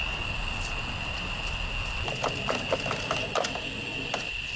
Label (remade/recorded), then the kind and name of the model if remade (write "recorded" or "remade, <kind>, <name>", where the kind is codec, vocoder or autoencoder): recorded